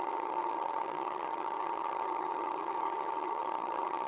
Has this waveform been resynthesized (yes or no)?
yes